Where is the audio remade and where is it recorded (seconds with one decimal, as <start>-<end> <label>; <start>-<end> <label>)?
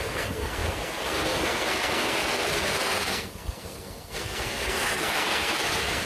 0.0-6.1 remade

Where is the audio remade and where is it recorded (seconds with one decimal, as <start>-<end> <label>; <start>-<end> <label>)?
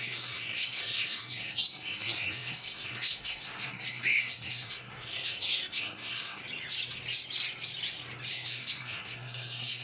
0.0-6.4 remade; 6.4-8.3 recorded; 8.3-9.8 remade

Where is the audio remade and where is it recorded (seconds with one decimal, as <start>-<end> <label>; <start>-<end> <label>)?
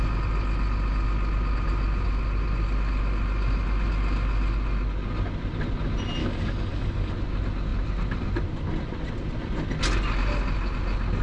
0.0-6.2 recorded; 6.2-7.1 remade; 7.1-11.2 recorded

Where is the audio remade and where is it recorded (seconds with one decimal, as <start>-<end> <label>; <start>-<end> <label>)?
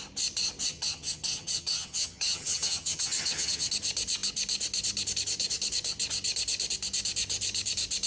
0.0-0.7 recorded; 0.7-3.7 remade; 3.7-8.1 recorded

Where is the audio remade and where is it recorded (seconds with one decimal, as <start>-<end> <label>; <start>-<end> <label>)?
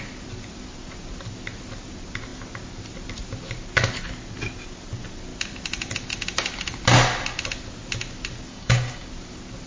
0.0-8.5 recorded; 8.5-9.1 remade; 9.1-9.7 recorded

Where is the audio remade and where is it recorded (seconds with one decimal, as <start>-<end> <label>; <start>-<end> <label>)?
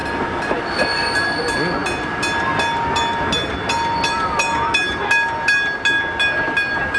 0.0-7.0 recorded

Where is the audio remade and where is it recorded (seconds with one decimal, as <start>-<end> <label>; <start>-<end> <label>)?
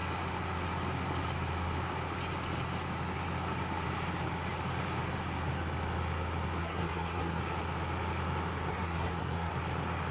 0.0-6.6 recorded; 6.6-7.4 remade; 7.4-8.7 recorded; 8.7-9.5 remade; 9.5-10.1 recorded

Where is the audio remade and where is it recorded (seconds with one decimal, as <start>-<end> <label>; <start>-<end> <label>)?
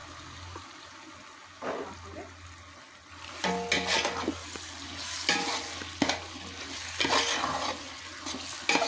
0.0-8.9 recorded